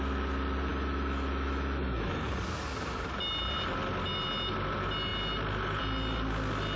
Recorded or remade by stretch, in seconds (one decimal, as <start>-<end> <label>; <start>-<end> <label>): 0.0-0.7 recorded; 0.7-2.2 remade; 2.2-6.8 recorded

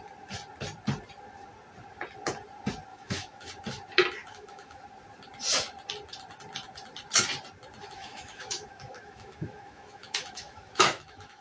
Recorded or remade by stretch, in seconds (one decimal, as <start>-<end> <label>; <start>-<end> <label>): 0.0-2.9 recorded; 2.9-3.5 remade; 3.5-4.2 recorded; 4.2-4.8 remade; 4.8-7.8 recorded; 7.8-11.4 remade

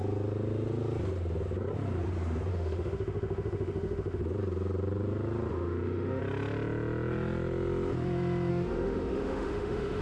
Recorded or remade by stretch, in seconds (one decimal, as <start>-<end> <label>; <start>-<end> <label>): 0.0-2.5 recorded; 2.5-4.2 remade; 4.2-5.5 recorded; 5.5-6.2 remade; 6.2-8.5 recorded; 8.5-10.0 remade

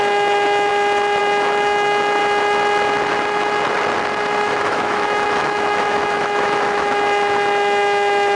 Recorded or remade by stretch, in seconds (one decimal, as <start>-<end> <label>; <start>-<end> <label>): 0.0-0.7 remade; 0.7-1.2 recorded; 1.2-2.2 remade; 2.2-4.6 recorded; 4.6-8.3 remade

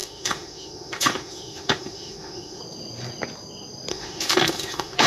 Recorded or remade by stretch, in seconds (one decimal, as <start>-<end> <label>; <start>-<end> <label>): 0.0-2.6 remade; 2.6-3.9 recorded; 3.9-5.1 remade

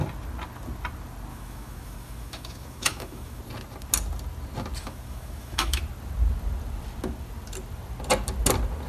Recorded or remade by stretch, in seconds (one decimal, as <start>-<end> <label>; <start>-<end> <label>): 0.0-1.3 recorded; 1.3-3.4 remade; 3.4-4.8 recorded; 4.8-5.8 remade; 5.8-8.9 recorded

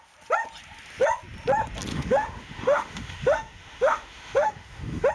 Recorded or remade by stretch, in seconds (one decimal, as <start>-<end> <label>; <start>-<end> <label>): 0.0-1.9 recorded; 1.9-5.1 remade